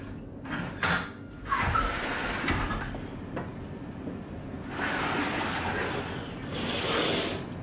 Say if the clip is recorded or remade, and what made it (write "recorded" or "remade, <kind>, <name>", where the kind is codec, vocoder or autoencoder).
recorded